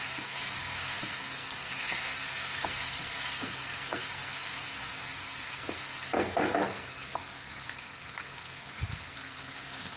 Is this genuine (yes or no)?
no